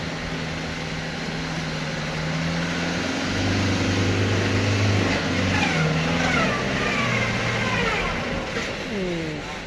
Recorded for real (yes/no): yes